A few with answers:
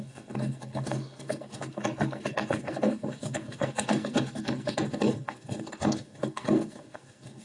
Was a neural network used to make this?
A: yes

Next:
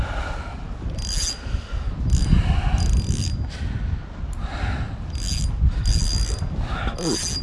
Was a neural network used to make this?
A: no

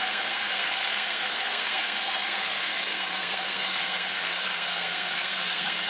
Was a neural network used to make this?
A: yes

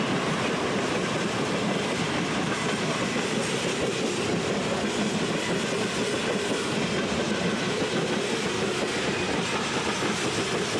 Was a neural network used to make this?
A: no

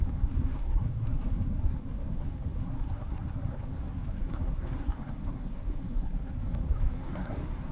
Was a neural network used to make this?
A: yes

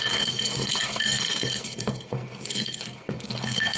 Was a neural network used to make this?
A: yes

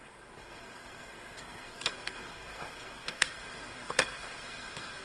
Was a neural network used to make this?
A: yes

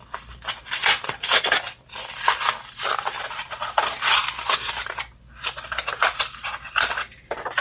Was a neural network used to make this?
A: no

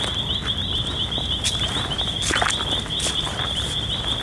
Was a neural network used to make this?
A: no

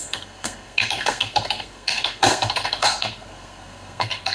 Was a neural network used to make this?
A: yes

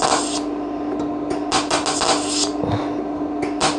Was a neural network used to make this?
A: no